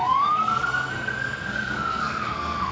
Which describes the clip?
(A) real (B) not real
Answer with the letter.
B